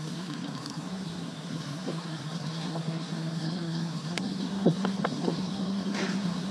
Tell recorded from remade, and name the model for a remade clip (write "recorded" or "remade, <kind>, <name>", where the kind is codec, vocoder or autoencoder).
remade, codec, SNAC